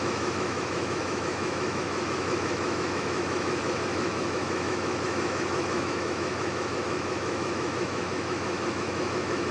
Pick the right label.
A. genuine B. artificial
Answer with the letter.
B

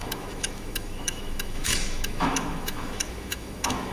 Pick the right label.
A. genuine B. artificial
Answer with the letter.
B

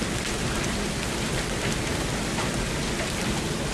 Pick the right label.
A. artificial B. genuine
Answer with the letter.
B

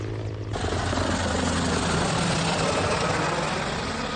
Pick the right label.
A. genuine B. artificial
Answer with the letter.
A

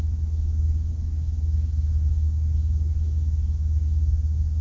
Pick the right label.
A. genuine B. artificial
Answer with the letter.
B